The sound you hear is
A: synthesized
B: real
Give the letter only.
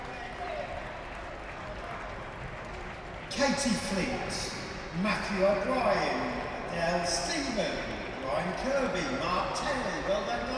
B